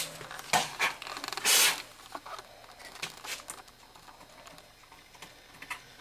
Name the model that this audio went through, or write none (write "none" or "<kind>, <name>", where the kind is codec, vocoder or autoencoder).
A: none